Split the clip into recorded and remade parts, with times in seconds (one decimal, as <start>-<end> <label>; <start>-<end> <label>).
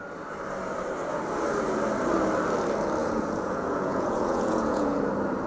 0.0-3.0 recorded; 3.0-5.1 remade; 5.1-5.5 recorded